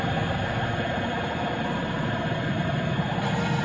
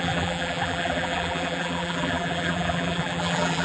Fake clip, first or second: second